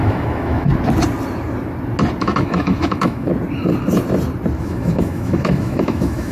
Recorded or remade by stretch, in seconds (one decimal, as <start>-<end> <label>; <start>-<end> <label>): 0.0-0.7 remade; 0.7-2.2 recorded; 2.2-3.3 remade; 3.3-4.6 recorded; 4.6-6.3 remade